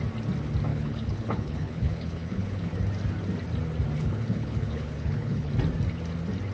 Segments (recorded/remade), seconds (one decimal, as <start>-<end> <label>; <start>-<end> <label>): 0.0-0.7 recorded; 0.7-2.7 remade; 2.7-4.0 recorded; 4.0-5.5 remade; 5.5-6.5 recorded